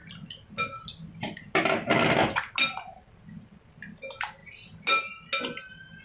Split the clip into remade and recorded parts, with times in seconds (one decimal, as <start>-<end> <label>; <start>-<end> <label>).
0.0-6.0 recorded